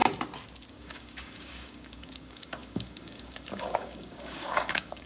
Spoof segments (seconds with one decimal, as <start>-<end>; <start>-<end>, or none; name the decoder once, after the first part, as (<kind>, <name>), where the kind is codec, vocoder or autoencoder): 0.7-5.1 (codec, DAC)